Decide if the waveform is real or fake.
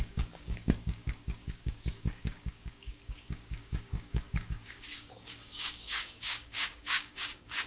fake